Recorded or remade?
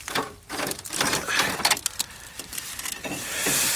remade